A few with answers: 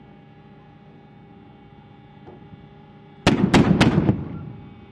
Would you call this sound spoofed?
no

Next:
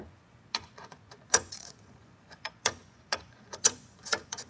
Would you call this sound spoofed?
yes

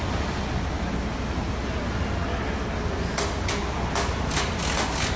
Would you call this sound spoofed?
no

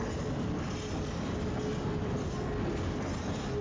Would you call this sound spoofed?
no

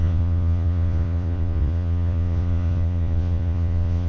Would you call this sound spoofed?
yes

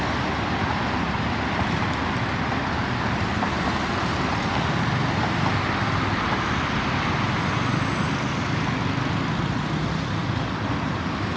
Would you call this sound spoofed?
no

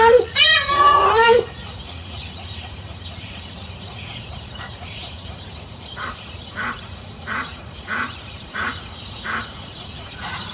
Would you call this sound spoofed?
yes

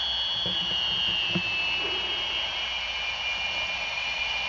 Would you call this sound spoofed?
no